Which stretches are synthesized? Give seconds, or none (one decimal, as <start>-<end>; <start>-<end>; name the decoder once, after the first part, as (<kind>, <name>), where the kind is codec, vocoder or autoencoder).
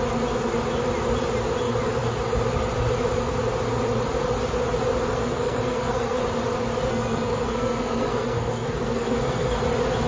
5.1-6.2 (codec, SNAC); 6.9-9.6